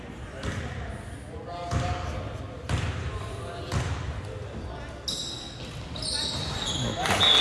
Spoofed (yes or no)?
no